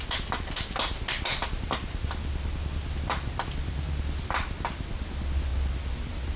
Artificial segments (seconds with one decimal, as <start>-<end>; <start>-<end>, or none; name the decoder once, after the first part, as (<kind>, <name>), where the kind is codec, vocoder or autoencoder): 1.5-4.7 (vocoder, BigVGAN v2)